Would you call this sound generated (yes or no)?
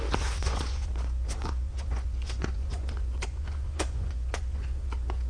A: yes